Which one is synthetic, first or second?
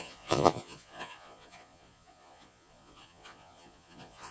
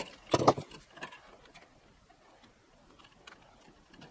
first